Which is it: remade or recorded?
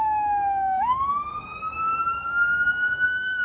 remade